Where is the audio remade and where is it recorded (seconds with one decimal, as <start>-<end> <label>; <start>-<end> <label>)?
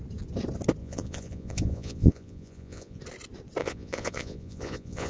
0.0-0.8 recorded; 0.8-3.0 remade; 3.0-3.6 recorded; 3.6-5.1 remade